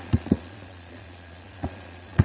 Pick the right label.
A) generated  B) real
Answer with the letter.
A